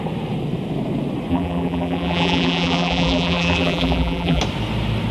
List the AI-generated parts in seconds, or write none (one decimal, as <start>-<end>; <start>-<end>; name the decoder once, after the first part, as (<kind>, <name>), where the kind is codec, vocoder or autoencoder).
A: 1.3-4.4 (vocoder, BigVGAN v2)